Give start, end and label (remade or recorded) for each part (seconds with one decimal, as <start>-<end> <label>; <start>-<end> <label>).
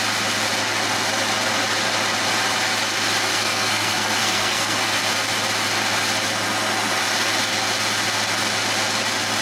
0.0-3.3 recorded; 3.3-5.0 remade; 5.0-9.4 recorded